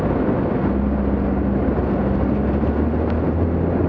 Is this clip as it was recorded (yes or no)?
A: yes